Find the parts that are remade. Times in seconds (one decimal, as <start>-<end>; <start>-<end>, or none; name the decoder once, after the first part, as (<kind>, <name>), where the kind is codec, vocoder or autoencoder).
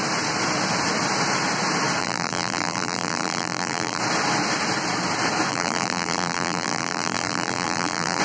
2.0-4.0 (vocoder, BigVGAN v2); 5.5-8.2